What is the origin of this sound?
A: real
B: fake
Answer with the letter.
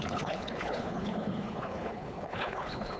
B